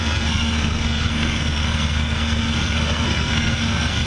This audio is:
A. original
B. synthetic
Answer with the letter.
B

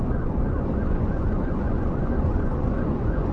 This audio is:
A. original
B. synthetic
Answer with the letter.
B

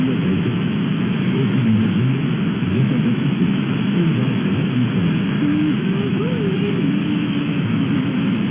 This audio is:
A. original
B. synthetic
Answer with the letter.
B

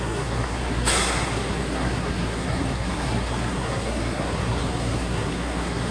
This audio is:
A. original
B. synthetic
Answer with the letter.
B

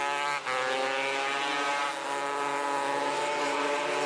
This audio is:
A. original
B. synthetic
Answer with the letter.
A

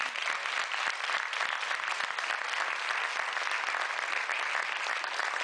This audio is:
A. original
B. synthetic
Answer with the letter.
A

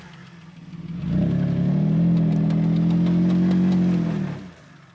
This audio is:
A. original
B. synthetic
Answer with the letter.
A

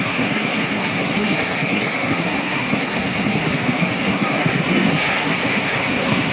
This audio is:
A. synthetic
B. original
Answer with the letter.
A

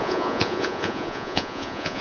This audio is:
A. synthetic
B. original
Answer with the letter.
A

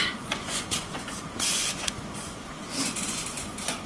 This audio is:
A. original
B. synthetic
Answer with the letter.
B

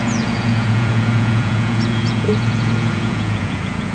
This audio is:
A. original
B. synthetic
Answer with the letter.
B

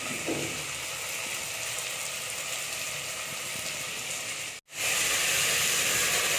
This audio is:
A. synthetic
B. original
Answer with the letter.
B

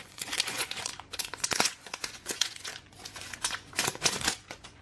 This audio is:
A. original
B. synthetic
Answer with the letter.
B